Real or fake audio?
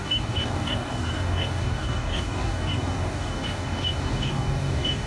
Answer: fake